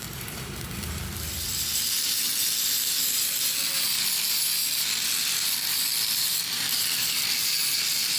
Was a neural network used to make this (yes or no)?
yes